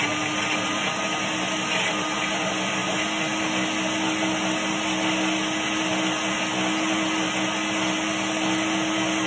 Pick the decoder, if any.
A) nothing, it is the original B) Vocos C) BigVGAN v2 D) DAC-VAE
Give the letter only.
A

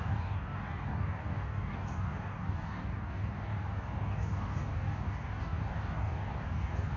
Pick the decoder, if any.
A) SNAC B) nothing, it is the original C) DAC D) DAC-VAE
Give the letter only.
C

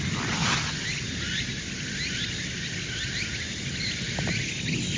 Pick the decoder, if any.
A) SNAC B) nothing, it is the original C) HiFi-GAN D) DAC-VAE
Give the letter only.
B